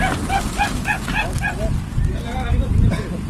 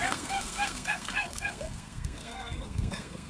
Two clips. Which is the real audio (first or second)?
first